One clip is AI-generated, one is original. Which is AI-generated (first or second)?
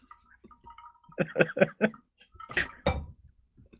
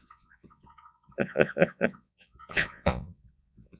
second